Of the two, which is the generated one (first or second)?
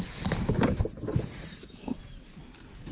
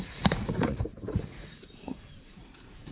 second